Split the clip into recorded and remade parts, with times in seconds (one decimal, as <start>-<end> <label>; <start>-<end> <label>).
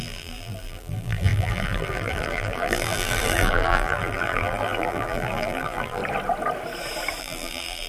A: 0.0-6.0 remade; 6.0-7.2 recorded; 7.2-7.9 remade